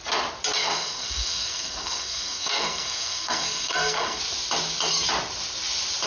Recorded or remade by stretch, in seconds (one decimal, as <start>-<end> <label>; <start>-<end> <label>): 0.0-0.6 recorded; 0.6-4.2 remade; 4.2-6.1 recorded